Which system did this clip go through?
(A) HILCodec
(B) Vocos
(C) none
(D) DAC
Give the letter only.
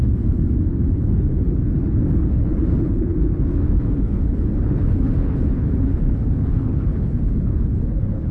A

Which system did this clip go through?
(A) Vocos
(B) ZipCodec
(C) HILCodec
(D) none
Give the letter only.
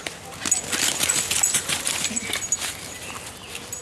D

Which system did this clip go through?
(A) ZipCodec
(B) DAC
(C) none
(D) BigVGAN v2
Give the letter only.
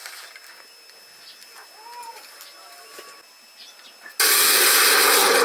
C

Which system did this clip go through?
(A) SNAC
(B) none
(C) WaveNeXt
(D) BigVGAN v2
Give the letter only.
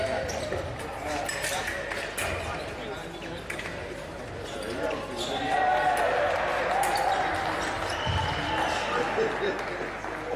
B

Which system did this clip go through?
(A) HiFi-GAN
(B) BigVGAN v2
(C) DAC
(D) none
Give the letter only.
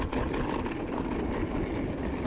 D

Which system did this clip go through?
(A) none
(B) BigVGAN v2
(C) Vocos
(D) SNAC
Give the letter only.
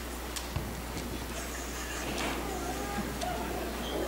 A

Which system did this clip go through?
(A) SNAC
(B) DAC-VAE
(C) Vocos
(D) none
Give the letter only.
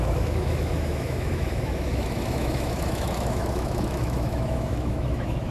B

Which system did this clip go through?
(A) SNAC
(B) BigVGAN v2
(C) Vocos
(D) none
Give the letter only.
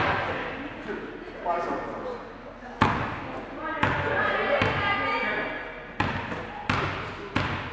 D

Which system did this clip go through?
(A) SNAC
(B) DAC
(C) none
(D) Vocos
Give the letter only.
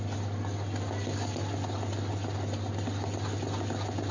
C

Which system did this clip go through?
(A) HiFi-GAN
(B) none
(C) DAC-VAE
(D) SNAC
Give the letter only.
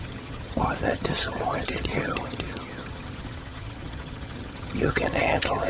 A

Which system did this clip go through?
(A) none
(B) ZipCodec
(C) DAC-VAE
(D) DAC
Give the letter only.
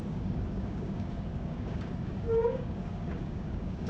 D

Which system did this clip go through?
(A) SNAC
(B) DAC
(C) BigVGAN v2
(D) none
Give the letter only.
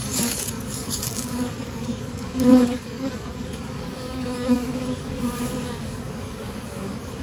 B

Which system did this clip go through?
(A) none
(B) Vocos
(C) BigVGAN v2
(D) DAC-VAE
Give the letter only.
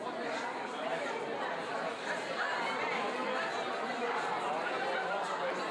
A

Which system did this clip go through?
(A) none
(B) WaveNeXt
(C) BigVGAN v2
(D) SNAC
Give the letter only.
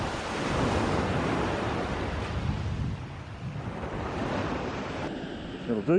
A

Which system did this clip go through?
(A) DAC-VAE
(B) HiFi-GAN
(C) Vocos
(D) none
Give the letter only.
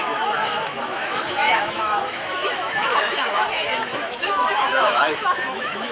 A